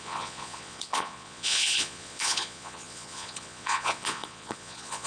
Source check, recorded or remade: remade